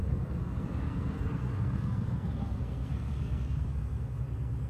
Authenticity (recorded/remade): remade